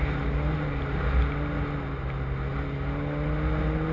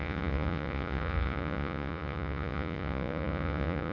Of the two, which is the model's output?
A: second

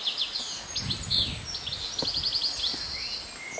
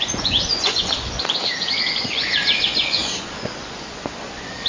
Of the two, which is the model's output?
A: second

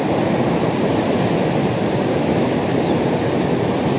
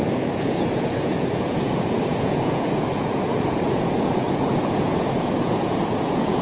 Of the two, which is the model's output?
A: second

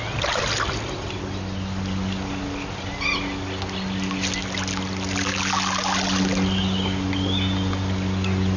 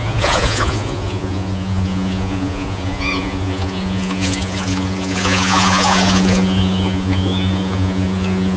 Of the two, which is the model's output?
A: second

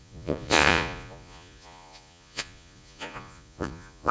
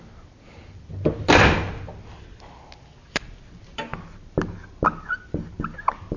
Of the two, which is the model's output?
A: first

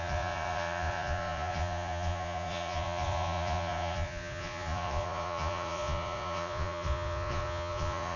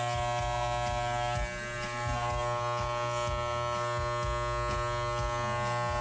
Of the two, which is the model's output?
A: first